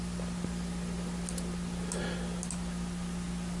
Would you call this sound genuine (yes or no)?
yes